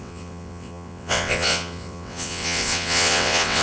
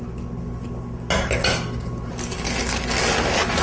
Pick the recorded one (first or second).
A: second